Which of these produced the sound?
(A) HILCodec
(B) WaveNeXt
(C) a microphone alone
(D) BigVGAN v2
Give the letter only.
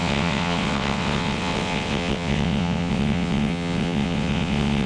B